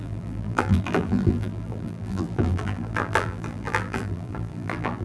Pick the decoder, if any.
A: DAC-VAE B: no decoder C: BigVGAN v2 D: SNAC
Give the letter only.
C